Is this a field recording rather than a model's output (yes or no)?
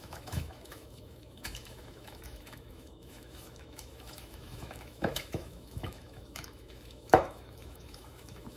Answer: no